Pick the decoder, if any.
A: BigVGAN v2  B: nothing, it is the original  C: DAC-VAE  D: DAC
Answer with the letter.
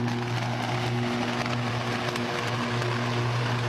B